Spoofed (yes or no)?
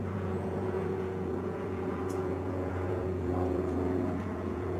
yes